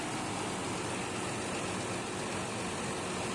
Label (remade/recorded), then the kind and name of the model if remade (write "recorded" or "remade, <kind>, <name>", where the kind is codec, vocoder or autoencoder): recorded